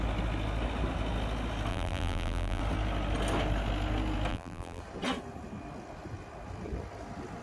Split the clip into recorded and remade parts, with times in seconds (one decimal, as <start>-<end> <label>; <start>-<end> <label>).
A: 0.0-1.7 recorded; 1.7-2.6 remade; 2.6-4.3 recorded; 4.3-4.8 remade; 4.8-7.4 recorded